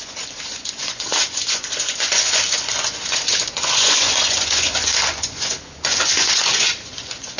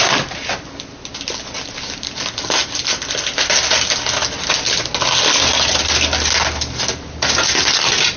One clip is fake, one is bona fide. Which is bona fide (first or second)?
second